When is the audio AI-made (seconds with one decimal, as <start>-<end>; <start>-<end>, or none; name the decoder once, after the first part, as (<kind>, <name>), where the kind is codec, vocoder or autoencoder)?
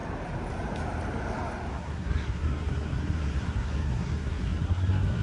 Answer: 1.7-5.2 (codec, SNAC)